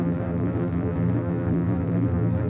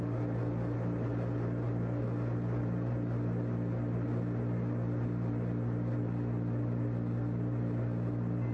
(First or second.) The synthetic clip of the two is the first